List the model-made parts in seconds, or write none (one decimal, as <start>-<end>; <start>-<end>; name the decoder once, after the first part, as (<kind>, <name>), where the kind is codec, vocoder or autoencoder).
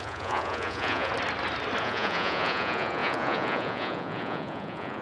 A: 0.0-1.1 (vocoder, Vocos); 1.8-5.0